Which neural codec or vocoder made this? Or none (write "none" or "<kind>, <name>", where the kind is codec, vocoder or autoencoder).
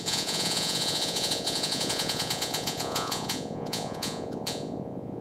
vocoder, Vocos